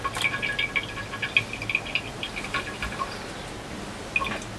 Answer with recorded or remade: recorded